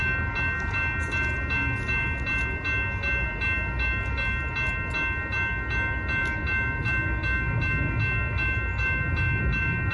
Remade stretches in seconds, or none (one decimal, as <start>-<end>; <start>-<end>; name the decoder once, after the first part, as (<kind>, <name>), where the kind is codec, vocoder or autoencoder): none